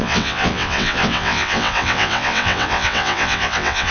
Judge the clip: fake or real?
fake